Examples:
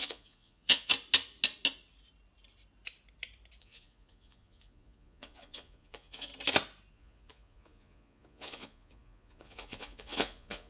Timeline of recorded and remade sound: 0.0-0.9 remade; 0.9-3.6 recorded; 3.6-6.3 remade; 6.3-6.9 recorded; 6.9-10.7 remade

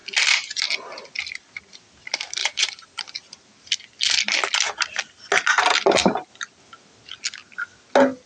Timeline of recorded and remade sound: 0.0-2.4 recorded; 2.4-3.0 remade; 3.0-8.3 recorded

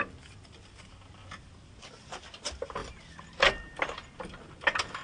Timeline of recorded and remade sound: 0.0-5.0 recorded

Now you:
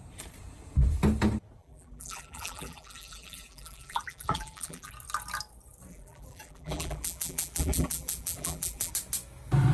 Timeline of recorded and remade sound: 0.0-1.6 recorded; 1.6-4.9 remade; 4.9-5.9 recorded; 5.9-8.9 remade; 8.9-9.7 recorded